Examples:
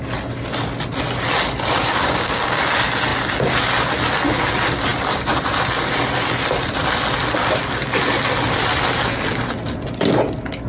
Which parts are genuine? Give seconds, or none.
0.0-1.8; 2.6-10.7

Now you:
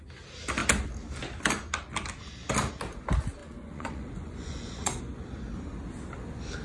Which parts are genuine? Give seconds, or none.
0.0-3.4; 5.0-6.6

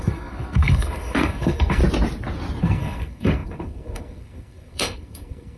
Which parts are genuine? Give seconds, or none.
1.8-2.6

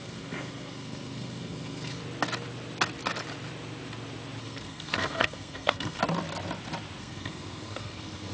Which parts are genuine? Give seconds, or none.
2.0-4.4; 6.0-7.0

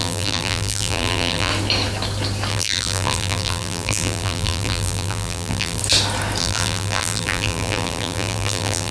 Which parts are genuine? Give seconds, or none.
1.5-2.5; 5.8-6.4